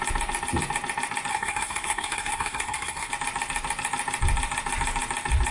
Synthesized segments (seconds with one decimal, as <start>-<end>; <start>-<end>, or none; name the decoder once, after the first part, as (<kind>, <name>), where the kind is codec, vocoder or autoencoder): 1.3-3.1 (codec, SNAC)